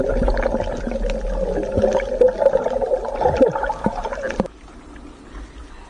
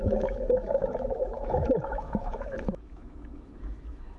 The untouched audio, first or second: first